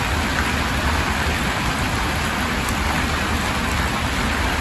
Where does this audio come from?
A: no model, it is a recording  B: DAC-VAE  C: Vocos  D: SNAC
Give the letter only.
A